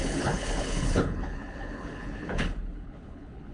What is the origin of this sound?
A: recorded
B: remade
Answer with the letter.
B